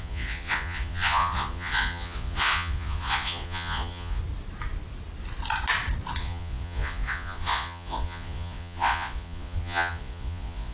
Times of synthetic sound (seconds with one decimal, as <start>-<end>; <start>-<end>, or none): 0.0-4.2; 6.2-10.7